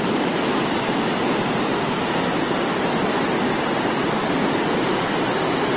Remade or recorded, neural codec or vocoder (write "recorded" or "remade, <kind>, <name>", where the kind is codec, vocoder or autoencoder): recorded